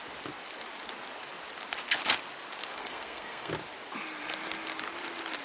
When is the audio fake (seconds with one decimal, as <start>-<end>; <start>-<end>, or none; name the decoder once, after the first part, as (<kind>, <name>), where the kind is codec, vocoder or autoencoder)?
2.7-3.5 (codec, SNAC)